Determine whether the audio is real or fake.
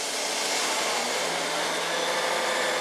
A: real